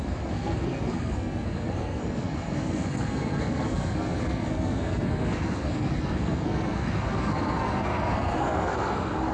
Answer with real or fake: fake